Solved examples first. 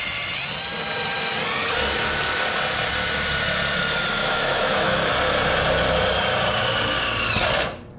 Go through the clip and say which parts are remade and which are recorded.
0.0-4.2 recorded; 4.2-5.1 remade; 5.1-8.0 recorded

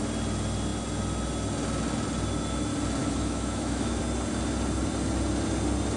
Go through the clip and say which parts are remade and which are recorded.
0.0-3.0 recorded; 3.0-4.0 remade; 4.0-6.0 recorded

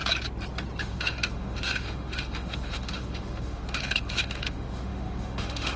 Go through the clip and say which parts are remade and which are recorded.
0.0-0.8 recorded; 0.8-5.8 remade

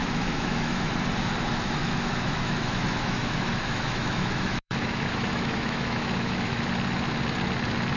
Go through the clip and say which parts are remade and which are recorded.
0.0-0.9 remade; 0.9-1.8 recorded; 1.8-6.6 remade; 6.6-8.0 recorded

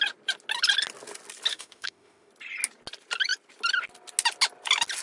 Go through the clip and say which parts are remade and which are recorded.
0.0-1.5 recorded; 1.5-2.3 remade; 2.3-5.0 recorded

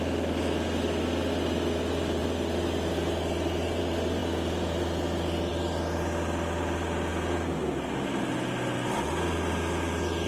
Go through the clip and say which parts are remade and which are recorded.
0.0-10.3 recorded

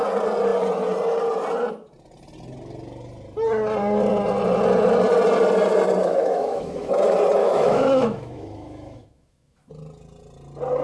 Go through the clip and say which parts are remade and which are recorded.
0.0-6.0 recorded; 6.0-6.9 remade; 6.9-7.4 recorded; 7.4-9.7 remade; 9.7-10.8 recorded

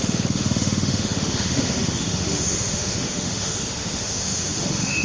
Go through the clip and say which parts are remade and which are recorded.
0.0-5.0 remade